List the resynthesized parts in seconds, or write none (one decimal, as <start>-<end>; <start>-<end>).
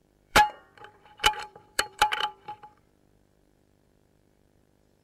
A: 0.0-5.0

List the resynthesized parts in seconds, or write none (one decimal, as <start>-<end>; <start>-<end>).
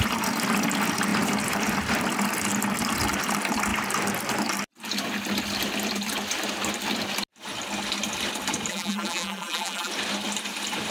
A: 8.7-9.9